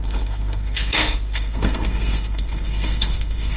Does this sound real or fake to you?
fake